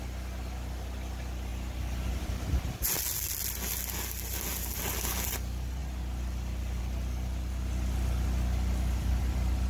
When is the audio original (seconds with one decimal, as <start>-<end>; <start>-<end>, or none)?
0.0-9.7